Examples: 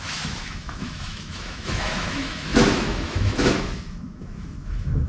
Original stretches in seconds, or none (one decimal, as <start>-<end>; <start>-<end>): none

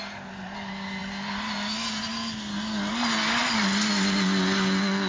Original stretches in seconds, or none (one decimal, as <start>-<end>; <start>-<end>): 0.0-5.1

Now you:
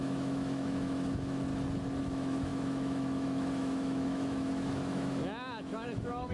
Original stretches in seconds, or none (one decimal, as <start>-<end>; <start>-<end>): 1.5-2.0